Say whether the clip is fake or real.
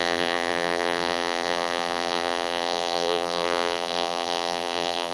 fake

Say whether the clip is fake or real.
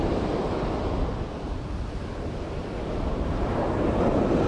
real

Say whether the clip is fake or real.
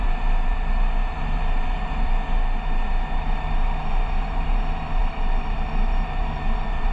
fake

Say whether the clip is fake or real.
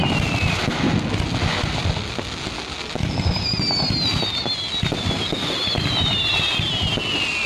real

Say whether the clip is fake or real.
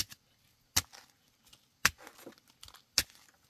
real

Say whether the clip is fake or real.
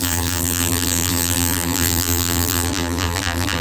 fake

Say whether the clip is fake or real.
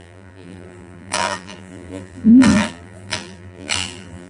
fake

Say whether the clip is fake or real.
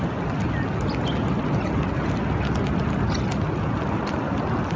real